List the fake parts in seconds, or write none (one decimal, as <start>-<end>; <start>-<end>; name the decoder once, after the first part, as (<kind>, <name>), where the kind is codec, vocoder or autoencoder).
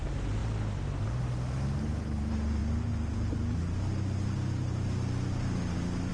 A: none